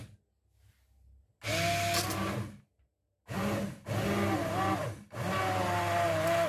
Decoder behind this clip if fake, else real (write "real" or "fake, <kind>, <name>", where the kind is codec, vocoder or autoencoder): real